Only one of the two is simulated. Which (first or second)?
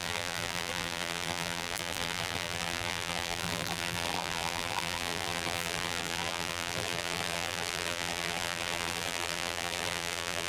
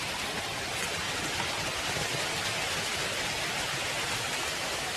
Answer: first